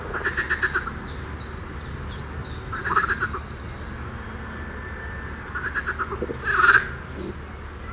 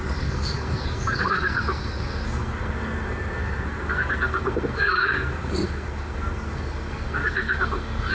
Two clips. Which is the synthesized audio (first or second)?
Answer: second